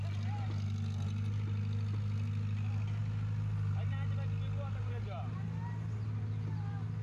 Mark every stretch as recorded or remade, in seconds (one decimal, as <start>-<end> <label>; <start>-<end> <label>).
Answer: 0.0-7.0 recorded